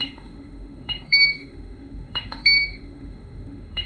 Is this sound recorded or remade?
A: remade